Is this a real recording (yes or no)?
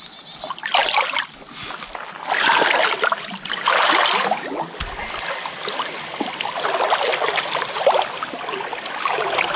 yes